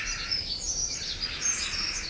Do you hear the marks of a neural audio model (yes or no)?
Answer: no